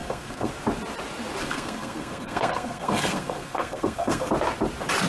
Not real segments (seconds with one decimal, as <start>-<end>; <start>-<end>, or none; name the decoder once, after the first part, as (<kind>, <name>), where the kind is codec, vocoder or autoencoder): 0.0-0.5 (codec, SNAC); 1.4-4.3